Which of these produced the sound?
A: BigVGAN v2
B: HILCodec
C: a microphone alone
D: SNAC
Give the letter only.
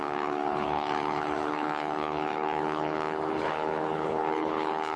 B